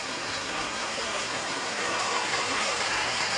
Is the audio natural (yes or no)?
no